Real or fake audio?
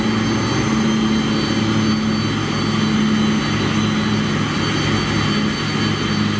real